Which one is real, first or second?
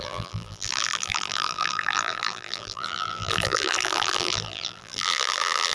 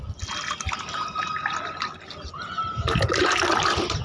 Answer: second